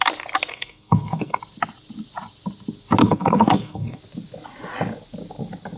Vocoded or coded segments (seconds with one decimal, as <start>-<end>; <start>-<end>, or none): 0.5-1.4; 3.0-4.0

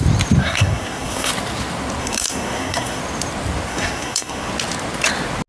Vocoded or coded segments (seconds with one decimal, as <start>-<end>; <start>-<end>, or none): 0.4-1.3; 2.0-3.0; 3.7-4.5

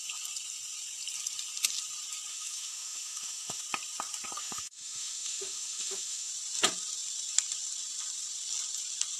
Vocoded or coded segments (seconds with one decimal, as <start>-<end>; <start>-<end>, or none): 2.3-3.6; 4.4-6.3